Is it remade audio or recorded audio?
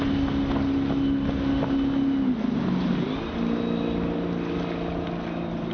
recorded